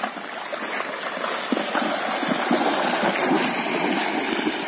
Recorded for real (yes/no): yes